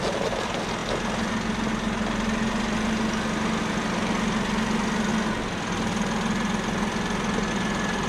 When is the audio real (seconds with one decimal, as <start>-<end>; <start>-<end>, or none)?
0.0-8.1